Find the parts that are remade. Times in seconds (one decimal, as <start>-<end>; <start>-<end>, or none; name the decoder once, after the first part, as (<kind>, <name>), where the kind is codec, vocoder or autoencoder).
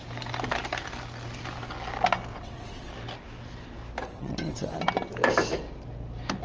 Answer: 2.3-2.9 (vocoder, WaveNeXt); 4.1-4.6